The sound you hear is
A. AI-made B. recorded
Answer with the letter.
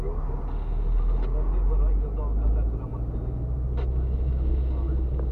B